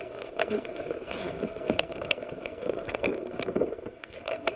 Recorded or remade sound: remade